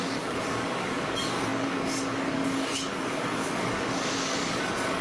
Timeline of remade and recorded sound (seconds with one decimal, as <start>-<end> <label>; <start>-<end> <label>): 0.0-5.0 remade

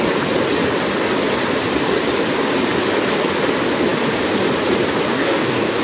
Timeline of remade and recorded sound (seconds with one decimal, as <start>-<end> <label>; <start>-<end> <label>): 0.0-5.1 recorded; 5.1-5.8 remade

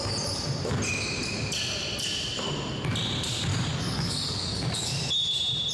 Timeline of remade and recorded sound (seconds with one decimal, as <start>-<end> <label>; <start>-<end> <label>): 0.0-3.5 recorded; 3.5-5.1 remade; 5.1-5.7 recorded

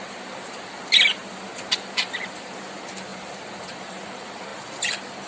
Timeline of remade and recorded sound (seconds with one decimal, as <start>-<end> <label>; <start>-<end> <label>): 0.0-5.3 recorded